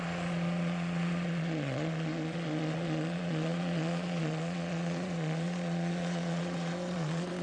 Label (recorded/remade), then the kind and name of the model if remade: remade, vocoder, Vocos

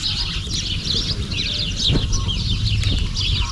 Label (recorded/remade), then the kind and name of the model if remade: recorded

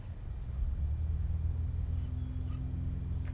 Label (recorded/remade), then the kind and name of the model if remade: recorded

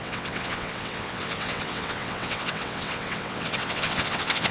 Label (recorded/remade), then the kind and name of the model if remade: remade, vocoder, WaveNeXt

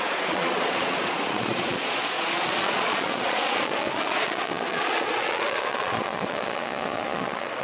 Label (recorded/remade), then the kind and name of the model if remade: remade, vocoder, Vocos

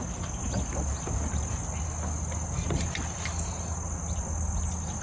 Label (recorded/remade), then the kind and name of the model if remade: recorded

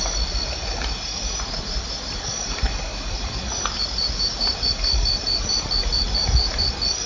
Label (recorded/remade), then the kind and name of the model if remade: recorded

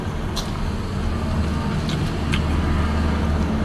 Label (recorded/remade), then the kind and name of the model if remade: recorded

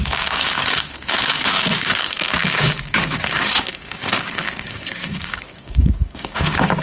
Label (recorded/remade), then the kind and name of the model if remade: remade, codec, DAC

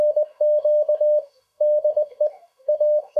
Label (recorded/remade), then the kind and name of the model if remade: remade, autoencoder, DAC-VAE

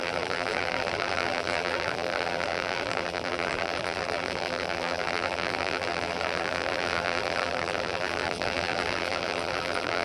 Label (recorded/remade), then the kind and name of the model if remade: remade, vocoder, BigVGAN v2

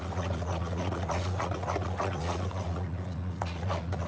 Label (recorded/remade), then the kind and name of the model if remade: remade, vocoder, Vocos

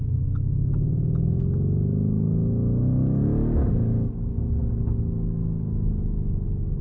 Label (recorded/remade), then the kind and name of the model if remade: recorded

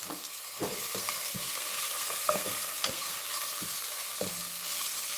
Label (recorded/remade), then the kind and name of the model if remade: remade, codec, SNAC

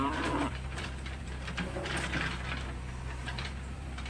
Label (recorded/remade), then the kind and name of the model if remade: remade, vocoder, BigVGAN v2